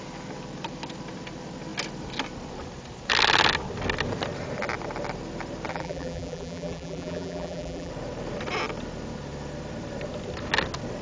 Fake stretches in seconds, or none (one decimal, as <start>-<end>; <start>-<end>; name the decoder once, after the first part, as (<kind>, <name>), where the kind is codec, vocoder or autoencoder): 5.7-7.9 (vocoder, BigVGAN v2)